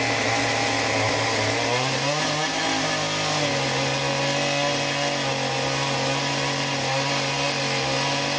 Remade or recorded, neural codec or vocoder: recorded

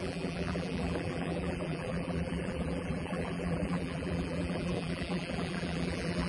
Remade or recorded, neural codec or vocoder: remade, vocoder, BigVGAN v2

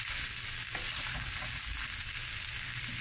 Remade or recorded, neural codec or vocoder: recorded